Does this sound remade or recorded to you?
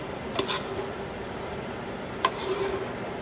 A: recorded